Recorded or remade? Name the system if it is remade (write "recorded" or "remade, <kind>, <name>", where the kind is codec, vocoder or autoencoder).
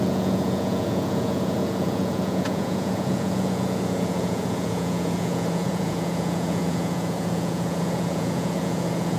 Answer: remade, vocoder, Vocos